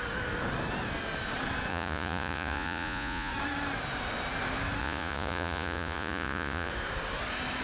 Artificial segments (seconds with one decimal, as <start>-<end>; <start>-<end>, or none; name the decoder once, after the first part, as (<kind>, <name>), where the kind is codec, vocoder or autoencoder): 1.7-3.3 (vocoder, Vocos); 4.8-6.7